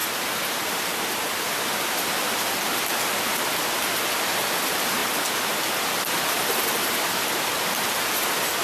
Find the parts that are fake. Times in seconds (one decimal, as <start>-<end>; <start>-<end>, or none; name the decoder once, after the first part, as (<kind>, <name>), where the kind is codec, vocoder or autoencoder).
none